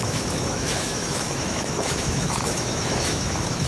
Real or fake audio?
fake